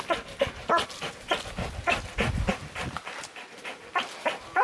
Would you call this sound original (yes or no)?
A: yes